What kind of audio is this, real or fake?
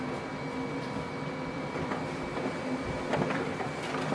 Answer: fake